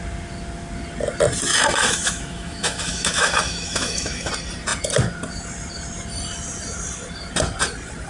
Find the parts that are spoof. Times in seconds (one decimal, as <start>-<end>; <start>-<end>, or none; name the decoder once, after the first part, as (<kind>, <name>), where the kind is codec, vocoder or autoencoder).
1.5-4.3 (autoencoder, DAC-VAE)